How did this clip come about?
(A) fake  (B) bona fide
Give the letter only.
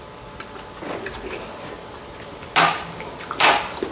B